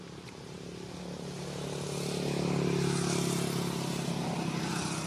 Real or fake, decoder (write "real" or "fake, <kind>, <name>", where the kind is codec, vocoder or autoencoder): real